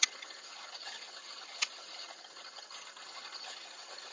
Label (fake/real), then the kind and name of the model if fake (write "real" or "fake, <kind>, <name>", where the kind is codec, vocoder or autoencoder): fake, vocoder, HiFi-GAN